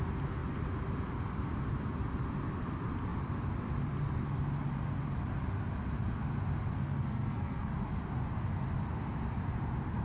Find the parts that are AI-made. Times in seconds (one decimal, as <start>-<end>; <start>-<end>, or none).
6.7-7.7